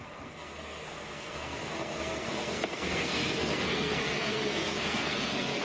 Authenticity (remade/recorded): remade